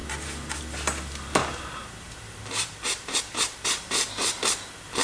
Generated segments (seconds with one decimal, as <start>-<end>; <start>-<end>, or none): 1.4-4.4